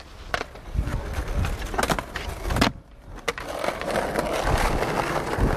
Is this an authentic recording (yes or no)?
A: yes